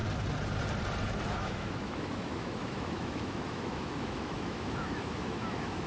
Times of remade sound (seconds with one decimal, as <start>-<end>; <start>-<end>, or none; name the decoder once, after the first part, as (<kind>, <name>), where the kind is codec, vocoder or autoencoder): 1.2-5.9 (autoencoder, DAC-VAE)